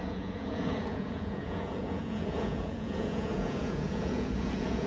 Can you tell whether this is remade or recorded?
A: remade